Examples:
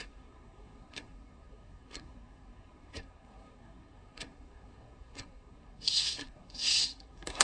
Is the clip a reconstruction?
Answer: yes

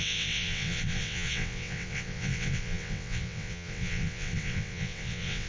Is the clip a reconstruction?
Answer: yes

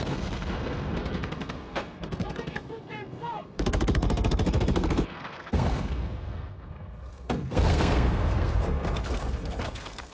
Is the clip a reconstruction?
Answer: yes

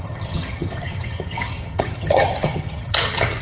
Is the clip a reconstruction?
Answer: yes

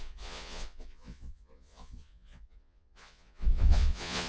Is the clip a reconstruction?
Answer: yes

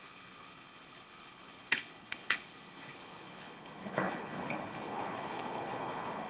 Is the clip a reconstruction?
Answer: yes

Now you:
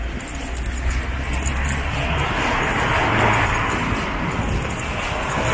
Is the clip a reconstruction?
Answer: no